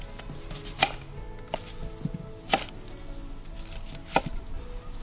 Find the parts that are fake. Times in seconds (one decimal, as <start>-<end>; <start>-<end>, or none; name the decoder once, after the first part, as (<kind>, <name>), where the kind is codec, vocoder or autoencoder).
none